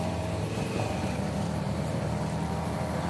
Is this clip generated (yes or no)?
yes